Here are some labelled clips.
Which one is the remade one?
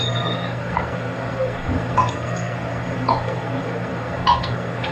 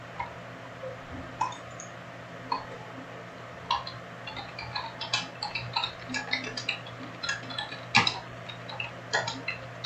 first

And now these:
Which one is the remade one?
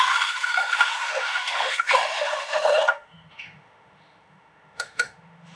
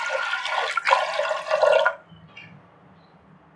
first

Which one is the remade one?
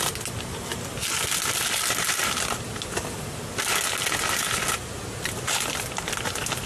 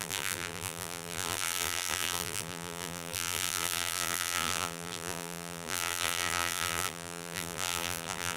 second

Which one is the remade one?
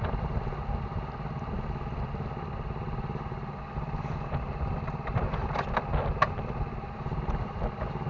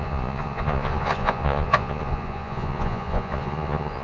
second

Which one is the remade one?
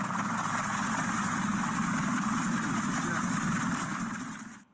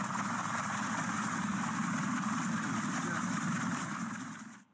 second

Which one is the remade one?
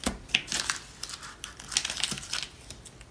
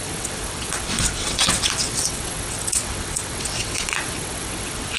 second